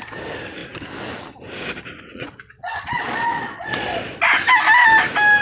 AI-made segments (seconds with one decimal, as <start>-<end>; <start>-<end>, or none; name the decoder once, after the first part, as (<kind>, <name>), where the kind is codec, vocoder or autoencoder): 2.1-4.2 (vocoder, Vocos)